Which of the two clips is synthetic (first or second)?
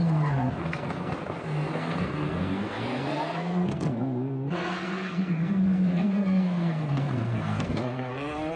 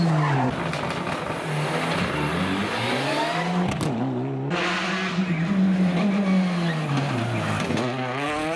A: first